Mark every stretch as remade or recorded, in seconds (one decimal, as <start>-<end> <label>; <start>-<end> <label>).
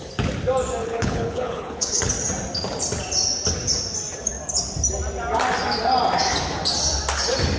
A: 0.0-0.8 recorded; 0.8-2.1 remade; 2.1-7.6 recorded